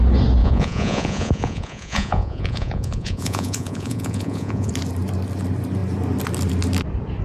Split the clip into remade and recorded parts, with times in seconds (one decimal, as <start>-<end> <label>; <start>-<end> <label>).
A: 0.0-0.4 recorded; 0.4-4.7 remade; 4.7-7.2 recorded